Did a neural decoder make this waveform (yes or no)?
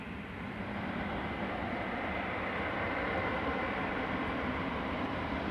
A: yes